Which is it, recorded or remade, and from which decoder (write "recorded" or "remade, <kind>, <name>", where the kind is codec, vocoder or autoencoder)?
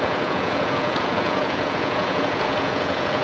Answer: remade, vocoder, Vocos